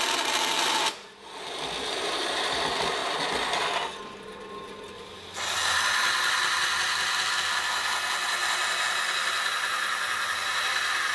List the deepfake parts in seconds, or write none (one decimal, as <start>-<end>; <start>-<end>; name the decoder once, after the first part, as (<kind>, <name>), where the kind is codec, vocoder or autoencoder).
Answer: none